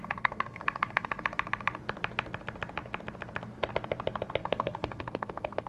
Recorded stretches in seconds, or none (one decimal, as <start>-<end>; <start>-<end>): 1.2-4.4

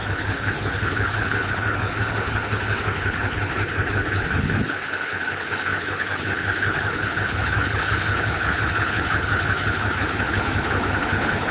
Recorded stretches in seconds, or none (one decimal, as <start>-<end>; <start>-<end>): none